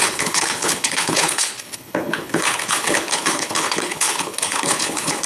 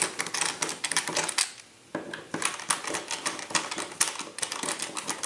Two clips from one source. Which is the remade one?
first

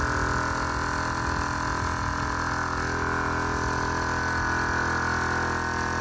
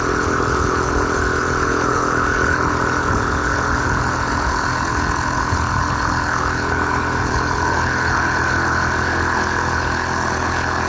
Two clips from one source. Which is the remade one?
second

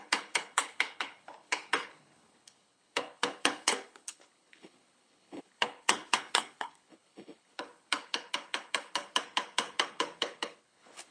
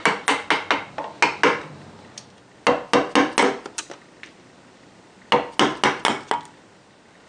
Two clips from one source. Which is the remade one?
first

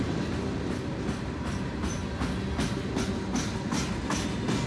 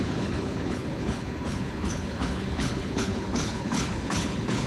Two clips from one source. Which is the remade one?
second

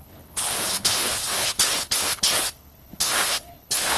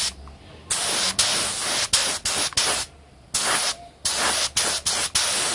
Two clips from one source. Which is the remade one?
first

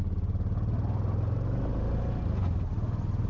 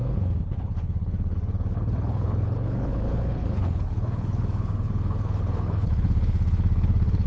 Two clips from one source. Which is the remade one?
second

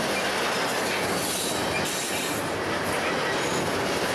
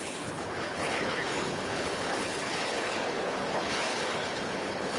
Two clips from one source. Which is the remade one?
second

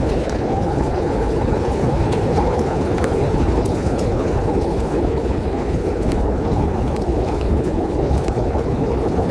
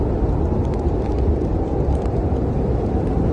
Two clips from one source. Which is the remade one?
first